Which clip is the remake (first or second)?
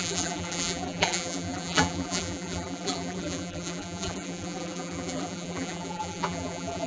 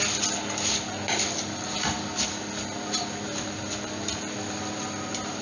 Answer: first